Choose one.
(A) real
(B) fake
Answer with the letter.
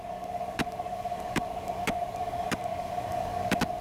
B